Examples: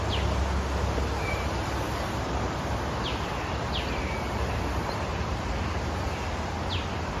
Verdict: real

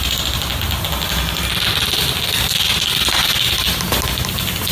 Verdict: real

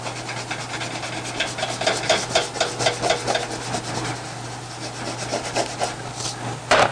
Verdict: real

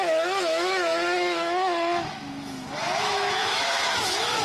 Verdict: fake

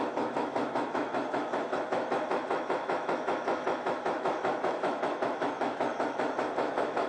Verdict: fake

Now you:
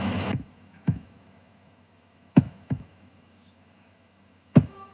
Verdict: fake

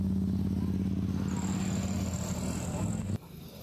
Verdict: real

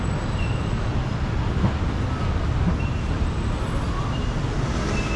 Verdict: real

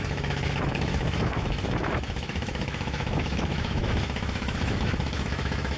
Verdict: fake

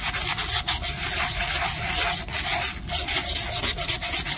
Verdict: real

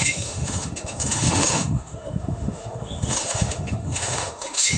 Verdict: fake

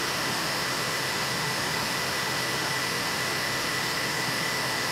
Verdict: fake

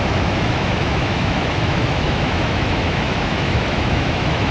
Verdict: fake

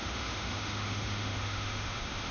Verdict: fake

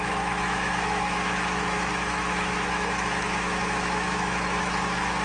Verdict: fake